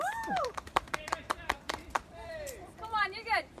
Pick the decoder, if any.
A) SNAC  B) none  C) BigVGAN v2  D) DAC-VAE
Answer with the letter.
C